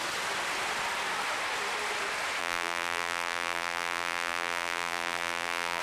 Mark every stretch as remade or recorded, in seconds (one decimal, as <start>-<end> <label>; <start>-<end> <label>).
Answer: 0.0-2.4 recorded; 2.4-5.8 remade